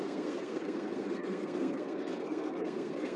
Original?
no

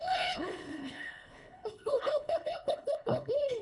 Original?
no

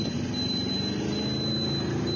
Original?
yes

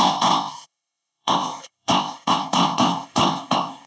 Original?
no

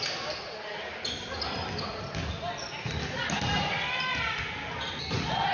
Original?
yes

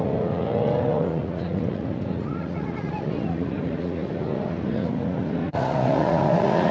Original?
no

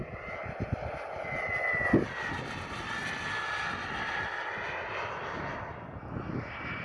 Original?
yes